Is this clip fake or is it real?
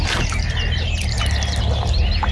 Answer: real